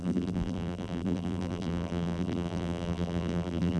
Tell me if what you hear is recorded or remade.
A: remade